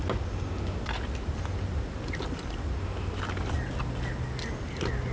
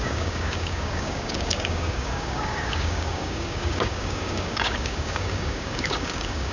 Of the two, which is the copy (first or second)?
second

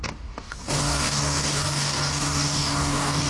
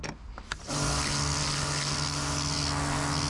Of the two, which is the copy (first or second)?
first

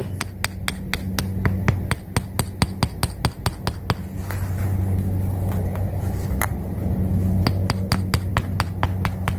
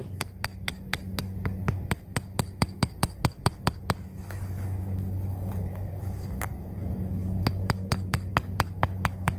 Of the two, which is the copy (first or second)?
second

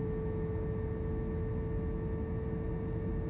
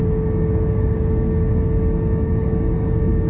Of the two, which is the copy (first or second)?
second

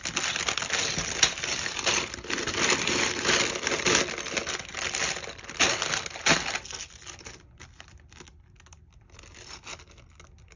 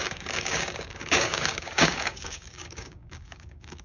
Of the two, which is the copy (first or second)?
second